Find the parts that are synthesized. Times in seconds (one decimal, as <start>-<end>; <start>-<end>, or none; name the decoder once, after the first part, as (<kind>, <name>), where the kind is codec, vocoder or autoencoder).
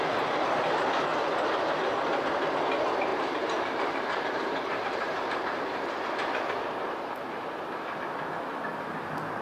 1.1-2.2 (vocoder, BigVGAN v2); 3.1-5.6